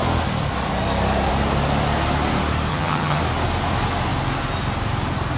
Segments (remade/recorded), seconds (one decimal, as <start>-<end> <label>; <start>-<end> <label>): 0.0-2.7 recorded; 2.7-3.2 remade; 3.2-5.4 recorded